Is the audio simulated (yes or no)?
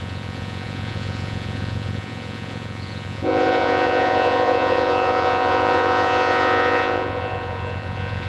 yes